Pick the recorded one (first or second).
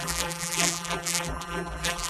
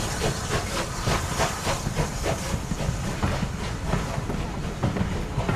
second